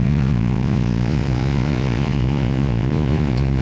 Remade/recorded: remade